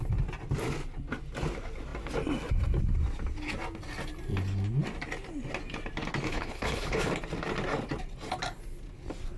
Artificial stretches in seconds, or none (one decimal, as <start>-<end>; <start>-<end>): 6.3-7.1